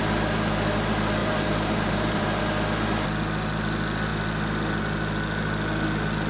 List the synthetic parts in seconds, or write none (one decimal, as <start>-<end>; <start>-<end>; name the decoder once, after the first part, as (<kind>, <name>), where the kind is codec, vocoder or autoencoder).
1.2-2.4 (vocoder, BigVGAN v2)